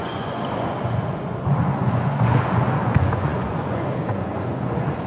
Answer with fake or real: fake